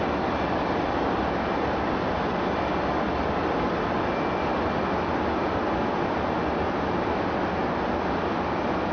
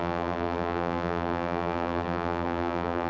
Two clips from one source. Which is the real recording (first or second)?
first